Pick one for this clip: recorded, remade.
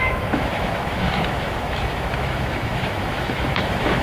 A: remade